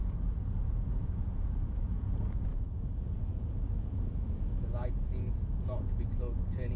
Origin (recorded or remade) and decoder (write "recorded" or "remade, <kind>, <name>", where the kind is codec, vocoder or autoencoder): remade, vocoder, Vocos